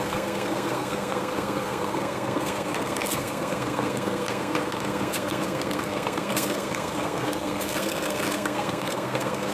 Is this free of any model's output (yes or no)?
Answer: no